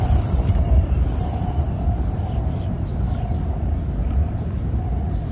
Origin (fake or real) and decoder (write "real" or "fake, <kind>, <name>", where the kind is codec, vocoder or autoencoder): real